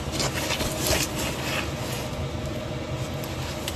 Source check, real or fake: real